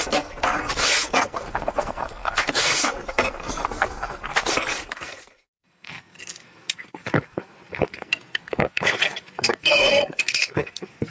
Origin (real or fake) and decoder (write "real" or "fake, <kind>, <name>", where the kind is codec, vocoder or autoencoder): fake, codec, SNAC